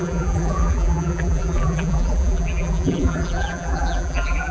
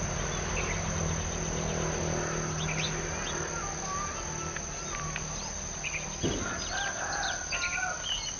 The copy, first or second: first